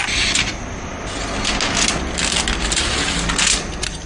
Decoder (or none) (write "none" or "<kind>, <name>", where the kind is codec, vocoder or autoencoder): none